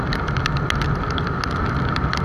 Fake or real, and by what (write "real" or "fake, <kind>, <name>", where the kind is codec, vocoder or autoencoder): real